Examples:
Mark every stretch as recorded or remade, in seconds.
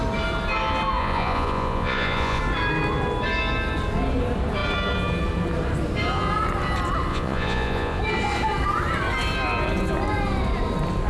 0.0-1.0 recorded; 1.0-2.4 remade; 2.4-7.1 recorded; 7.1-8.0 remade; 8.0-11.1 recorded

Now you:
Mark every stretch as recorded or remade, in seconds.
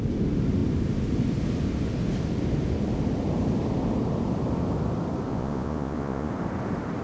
0.0-5.3 recorded; 5.3-6.3 remade; 6.3-7.0 recorded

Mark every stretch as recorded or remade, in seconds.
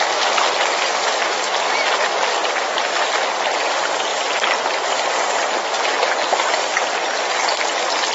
0.0-2.4 recorded; 2.4-3.4 remade; 3.4-8.1 recorded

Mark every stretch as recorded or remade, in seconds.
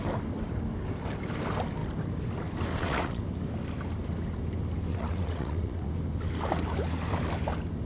0.0-2.7 recorded; 2.7-3.2 remade; 3.2-4.9 recorded; 4.9-5.9 remade; 5.9-7.9 recorded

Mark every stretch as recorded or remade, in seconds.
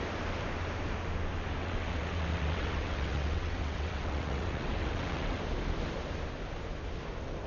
0.0-1.6 recorded; 1.6-5.4 remade; 5.4-7.5 recorded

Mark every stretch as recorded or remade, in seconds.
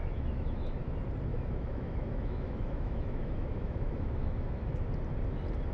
0.0-0.8 remade; 0.8-1.3 recorded; 1.3-4.7 remade; 4.7-5.7 recorded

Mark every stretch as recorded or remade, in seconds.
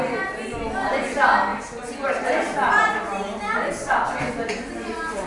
0.0-5.3 recorded